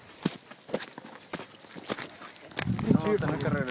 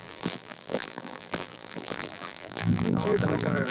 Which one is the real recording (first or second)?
first